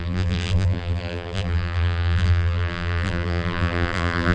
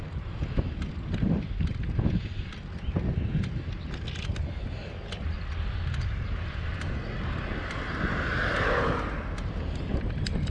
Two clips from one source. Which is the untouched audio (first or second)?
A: second